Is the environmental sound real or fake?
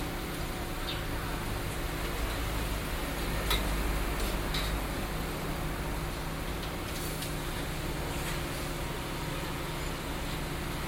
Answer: real